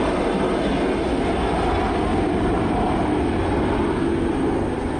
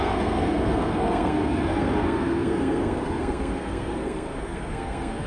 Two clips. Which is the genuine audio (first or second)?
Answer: first